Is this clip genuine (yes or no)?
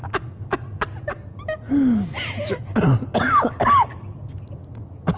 yes